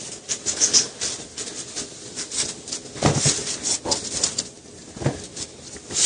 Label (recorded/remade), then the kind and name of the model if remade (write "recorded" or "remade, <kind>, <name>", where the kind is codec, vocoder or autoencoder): recorded